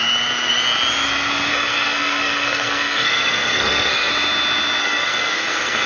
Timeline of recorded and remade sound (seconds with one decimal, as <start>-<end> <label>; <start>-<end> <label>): 0.0-1.5 recorded; 1.5-4.1 remade; 4.1-4.8 recorded; 4.8-5.9 remade